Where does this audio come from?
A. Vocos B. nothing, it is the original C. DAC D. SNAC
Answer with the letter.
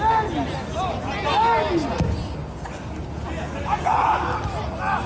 B